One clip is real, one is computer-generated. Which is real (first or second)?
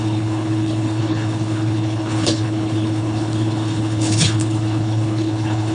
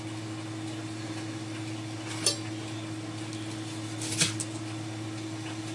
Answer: second